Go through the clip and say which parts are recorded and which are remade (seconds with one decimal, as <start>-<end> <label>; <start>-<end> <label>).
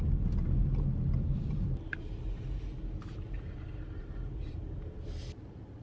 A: 0.0-1.3 recorded; 1.3-4.8 remade; 4.8-5.8 recorded